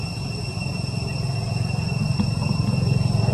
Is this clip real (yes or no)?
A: yes